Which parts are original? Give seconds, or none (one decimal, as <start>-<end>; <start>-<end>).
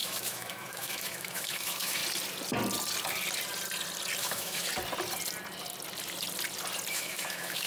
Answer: 2.0-4.2; 4.7-6.9